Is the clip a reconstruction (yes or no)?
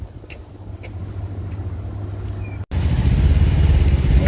no